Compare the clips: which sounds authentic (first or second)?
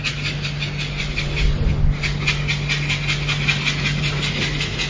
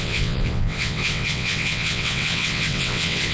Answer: first